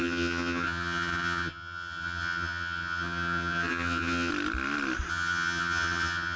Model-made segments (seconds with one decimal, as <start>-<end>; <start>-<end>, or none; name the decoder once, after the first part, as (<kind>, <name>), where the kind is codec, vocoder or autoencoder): 0.0-4.3 (vocoder, HiFi-GAN); 5.1-6.4